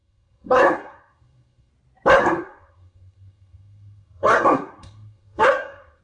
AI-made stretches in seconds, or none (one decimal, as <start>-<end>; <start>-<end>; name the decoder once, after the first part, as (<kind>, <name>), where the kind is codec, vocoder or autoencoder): 0.0-1.7 (codec, SNAC); 2.2-6.0